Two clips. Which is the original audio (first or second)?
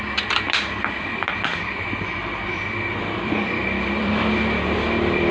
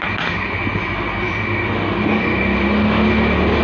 second